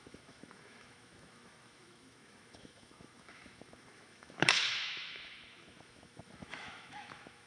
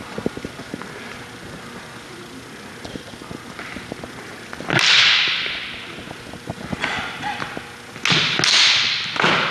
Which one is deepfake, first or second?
first